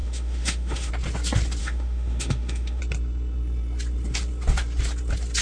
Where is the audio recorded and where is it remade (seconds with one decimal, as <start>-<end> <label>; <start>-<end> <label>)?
0.0-0.9 remade; 0.9-1.6 recorded; 1.6-2.8 remade; 2.8-5.4 recorded